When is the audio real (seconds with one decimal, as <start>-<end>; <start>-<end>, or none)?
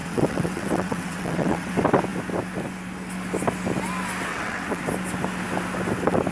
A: 1.7-4.3; 4.8-6.3